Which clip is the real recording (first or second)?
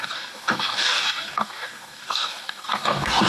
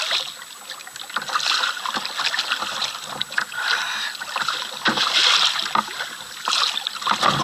second